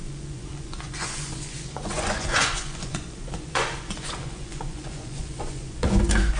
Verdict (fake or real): fake